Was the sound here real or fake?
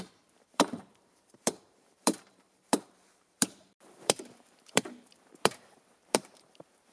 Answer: fake